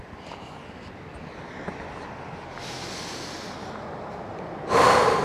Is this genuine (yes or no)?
yes